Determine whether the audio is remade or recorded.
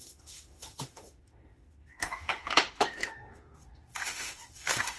remade